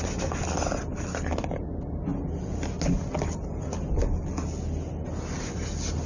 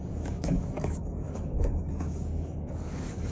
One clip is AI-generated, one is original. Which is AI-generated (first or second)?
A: second